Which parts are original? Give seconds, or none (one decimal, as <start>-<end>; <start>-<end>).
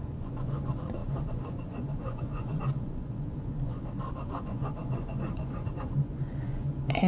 none